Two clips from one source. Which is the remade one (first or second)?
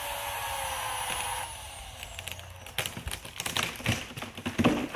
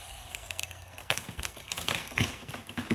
second